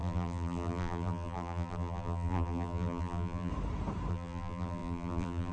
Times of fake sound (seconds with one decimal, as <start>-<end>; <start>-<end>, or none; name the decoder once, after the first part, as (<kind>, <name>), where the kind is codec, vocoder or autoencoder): 0.0-3.5 (vocoder, BigVGAN v2); 4.1-5.5